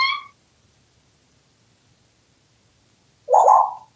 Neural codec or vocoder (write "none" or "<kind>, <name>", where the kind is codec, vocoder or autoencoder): none